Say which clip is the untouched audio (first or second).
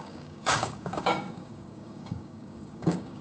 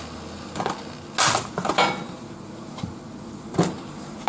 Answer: second